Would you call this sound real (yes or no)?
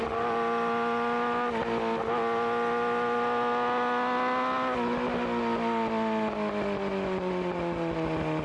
yes